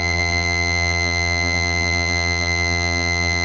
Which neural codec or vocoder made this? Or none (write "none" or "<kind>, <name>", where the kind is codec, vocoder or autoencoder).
vocoder, BigVGAN v2